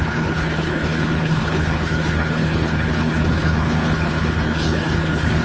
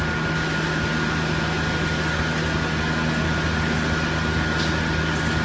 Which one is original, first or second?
second